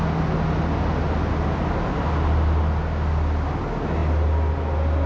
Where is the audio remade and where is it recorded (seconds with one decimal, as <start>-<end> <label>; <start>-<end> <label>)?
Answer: 0.0-5.1 recorded